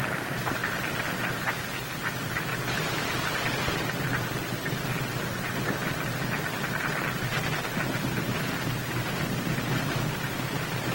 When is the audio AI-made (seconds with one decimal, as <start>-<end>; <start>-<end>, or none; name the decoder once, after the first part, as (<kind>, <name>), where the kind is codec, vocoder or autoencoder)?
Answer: none